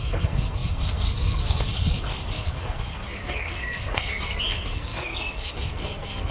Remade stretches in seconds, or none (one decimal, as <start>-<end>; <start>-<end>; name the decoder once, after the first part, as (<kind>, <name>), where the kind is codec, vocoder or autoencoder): 0.0-6.3 (codec, SNAC)

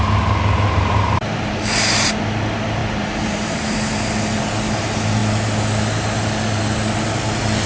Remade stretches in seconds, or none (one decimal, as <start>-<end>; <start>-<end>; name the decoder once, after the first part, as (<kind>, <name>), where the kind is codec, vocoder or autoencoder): 0.8-1.6 (vocoder, BigVGAN v2); 2.8-3.9

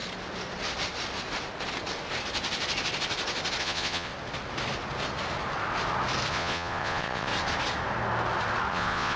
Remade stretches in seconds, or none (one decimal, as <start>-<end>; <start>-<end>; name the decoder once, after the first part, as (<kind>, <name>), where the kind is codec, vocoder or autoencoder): 3.6-4.1 (vocoder, Vocos); 6.3-7.3; 8.7-9.2

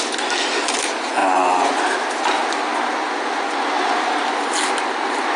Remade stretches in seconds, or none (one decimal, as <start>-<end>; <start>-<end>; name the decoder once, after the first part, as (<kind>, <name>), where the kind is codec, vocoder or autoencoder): none

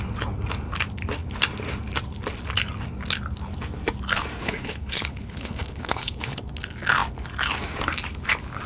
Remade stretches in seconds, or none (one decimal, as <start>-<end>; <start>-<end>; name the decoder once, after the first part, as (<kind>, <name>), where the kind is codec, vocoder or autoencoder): 4.4-6.4 (codec, HILCodec)

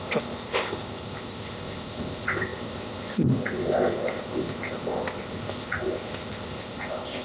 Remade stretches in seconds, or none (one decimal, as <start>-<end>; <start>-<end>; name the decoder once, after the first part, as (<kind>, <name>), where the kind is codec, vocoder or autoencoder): 0.0-7.2 (codec, ZipCodec)